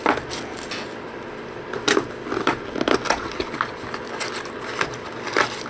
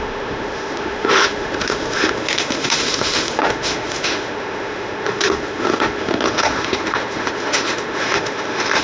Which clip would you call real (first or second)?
first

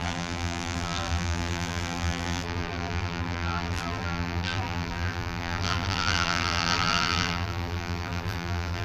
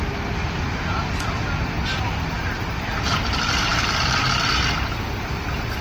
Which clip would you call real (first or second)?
second